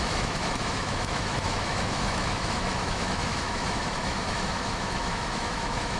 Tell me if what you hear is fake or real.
fake